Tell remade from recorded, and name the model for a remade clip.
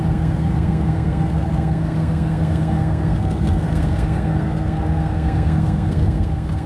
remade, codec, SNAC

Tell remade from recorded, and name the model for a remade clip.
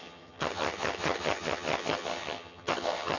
remade, vocoder, HiFi-GAN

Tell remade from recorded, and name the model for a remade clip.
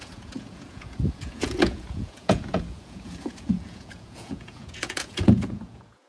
remade, vocoder, Vocos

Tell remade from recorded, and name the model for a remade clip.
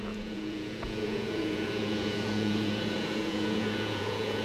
remade, vocoder, Vocos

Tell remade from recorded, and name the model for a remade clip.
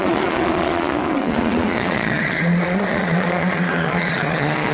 remade, vocoder, Vocos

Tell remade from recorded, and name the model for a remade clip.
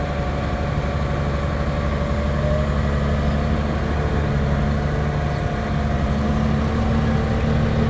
recorded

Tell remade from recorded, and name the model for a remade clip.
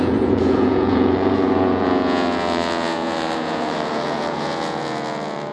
remade, vocoder, Vocos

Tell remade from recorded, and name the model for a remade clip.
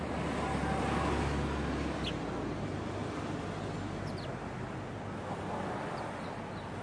recorded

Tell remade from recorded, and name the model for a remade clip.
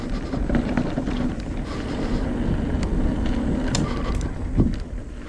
recorded